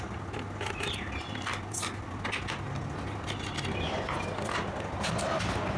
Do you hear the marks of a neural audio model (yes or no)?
no